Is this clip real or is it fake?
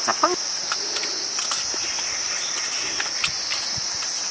real